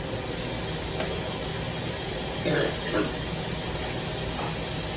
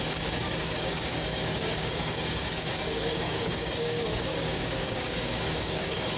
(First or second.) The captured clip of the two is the first